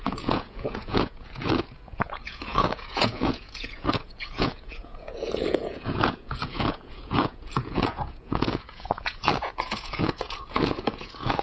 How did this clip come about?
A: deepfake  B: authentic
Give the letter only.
A